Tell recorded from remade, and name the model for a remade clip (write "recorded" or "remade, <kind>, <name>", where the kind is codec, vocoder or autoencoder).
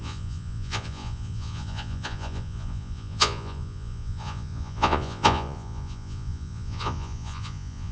remade, vocoder, Vocos